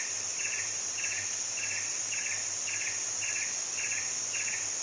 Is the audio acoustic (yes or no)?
yes